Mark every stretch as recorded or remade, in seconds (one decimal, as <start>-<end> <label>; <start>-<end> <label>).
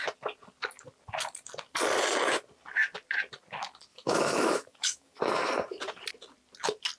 0.0-3.9 recorded; 3.9-5.2 remade; 5.2-7.0 recorded